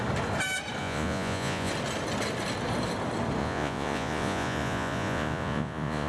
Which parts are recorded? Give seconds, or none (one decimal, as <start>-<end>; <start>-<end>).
0.0-0.8; 1.7-3.4